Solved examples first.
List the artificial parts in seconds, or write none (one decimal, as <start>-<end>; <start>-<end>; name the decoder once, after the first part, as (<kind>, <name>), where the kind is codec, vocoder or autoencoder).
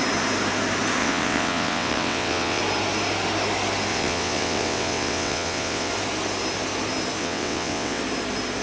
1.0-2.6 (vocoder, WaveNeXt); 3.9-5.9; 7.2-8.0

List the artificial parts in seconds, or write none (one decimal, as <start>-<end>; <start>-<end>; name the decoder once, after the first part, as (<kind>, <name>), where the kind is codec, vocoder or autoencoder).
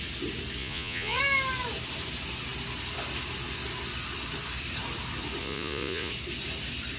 0.6-1.2 (vocoder, Vocos); 5.4-6.1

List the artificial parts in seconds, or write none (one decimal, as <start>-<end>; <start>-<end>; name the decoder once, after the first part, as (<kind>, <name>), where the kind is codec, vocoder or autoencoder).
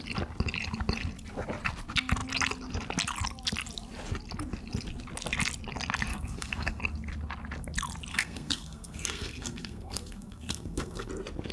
6.1-6.8 (codec, SNAC); 8.1-11.1